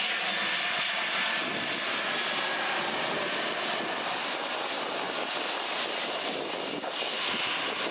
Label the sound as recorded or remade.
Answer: recorded